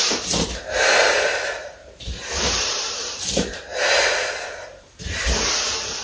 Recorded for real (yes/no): no